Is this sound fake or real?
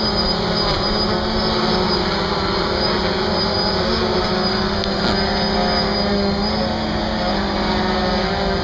real